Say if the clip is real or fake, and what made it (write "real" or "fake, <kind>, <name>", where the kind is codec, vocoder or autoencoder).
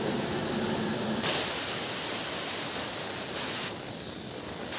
real